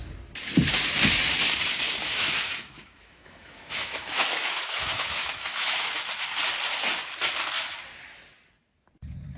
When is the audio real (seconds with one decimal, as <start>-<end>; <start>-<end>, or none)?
0.0-2.1; 5.9-9.4